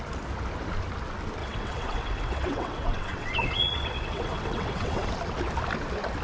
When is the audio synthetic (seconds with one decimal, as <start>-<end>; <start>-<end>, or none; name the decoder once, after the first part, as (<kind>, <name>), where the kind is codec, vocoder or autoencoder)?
1.4-5.1 (vocoder, WaveNeXt)